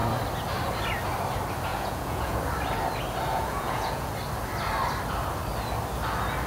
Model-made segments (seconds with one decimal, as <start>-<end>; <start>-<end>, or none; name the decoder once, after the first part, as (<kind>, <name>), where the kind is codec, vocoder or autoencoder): 1.7-2.4 (vocoder, Vocos); 3.3-4.1